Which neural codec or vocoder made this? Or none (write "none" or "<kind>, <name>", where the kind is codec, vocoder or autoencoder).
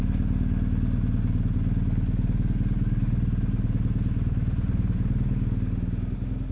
none